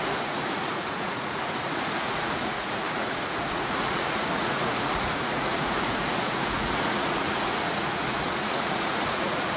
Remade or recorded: remade